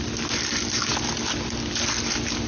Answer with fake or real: real